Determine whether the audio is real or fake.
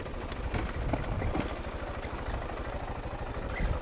real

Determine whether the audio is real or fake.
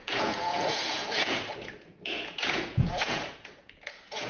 fake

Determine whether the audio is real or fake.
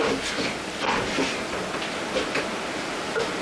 real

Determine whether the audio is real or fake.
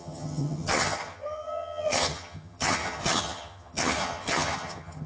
fake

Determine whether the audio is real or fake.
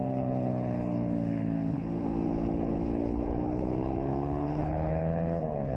fake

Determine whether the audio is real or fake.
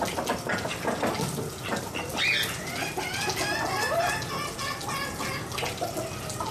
real